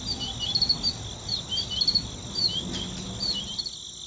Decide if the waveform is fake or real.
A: real